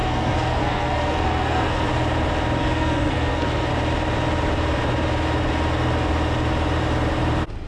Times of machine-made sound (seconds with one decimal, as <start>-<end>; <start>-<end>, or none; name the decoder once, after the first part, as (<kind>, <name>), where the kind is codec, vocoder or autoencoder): 0.0-1.9 (codec, SNAC); 2.6-3.7